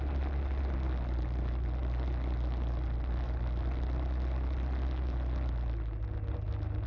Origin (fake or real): real